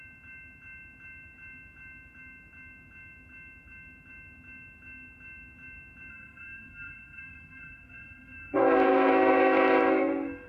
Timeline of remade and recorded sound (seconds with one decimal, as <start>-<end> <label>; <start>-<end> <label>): 0.0-6.1 recorded; 6.1-10.5 remade